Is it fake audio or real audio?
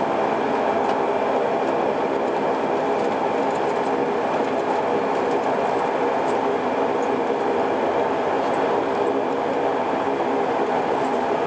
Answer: real